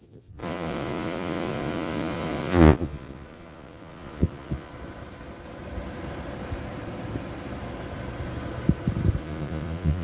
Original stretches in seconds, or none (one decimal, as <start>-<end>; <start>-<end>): 4.7-9.2